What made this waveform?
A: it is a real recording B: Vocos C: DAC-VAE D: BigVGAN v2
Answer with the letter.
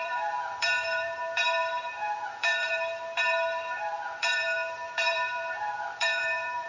D